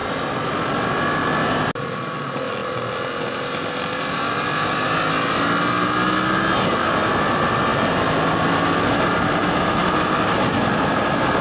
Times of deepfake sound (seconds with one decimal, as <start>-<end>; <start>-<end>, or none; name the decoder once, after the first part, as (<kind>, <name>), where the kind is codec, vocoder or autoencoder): none